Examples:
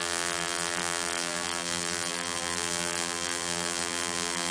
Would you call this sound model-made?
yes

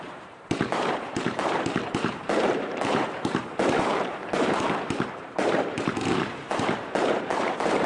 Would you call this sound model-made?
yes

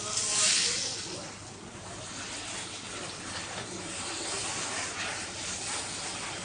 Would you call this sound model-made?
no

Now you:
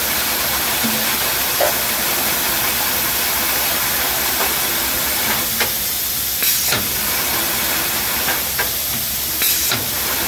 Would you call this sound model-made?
no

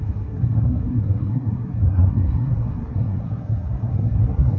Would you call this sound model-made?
yes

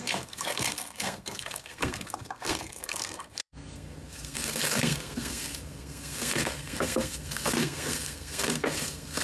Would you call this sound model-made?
yes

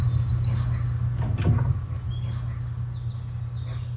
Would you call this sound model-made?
no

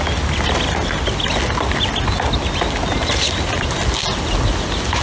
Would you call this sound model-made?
no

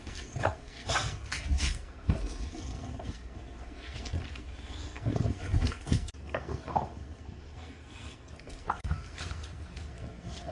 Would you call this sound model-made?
yes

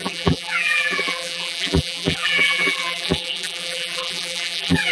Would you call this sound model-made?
yes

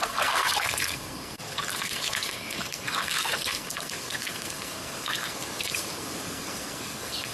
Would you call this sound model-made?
yes